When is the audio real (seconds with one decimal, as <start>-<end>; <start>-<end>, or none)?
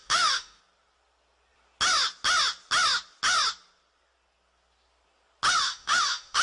0.6-5.6